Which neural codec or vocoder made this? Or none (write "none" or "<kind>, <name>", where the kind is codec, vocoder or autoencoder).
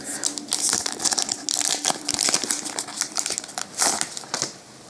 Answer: none